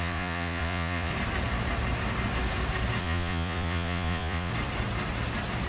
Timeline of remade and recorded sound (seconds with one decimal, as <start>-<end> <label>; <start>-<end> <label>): 0.0-1.1 remade; 1.1-3.0 recorded; 3.0-4.5 remade; 4.5-5.7 recorded